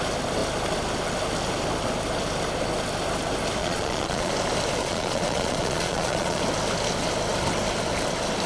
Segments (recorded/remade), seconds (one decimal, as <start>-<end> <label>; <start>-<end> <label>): 0.0-3.6 recorded; 3.6-4.3 remade; 4.3-4.8 recorded; 4.8-6.4 remade; 6.4-8.5 recorded

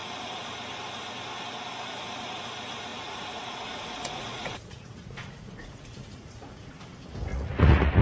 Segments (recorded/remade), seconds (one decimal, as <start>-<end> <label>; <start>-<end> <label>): 0.0-2.9 recorded; 2.9-6.7 remade; 6.7-7.3 recorded; 7.3-8.0 remade

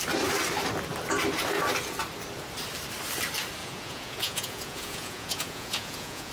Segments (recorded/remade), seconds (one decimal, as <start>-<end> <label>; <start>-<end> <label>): 0.0-3.6 recorded; 3.6-6.3 remade